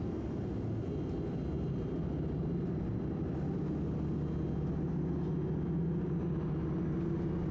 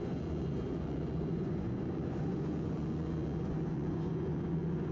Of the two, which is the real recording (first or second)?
first